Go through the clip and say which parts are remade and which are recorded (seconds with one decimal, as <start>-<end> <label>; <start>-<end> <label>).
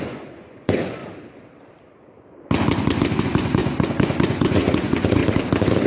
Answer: 0.0-1.0 remade; 1.0-3.2 recorded; 3.2-5.2 remade; 5.2-5.9 recorded